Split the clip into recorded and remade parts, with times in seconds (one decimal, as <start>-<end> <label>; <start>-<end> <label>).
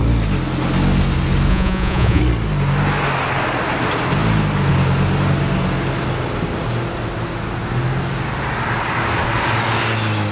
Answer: 0.0-1.5 recorded; 1.5-2.2 remade; 2.2-10.3 recorded